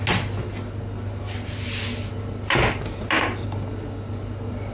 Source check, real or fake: real